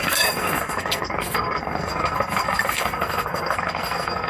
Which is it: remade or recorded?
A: remade